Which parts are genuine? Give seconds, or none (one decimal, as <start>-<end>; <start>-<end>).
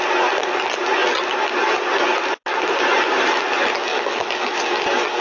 0.0-3.9; 4.6-5.2